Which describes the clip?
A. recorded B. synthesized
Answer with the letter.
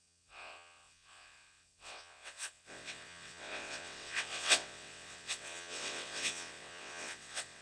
B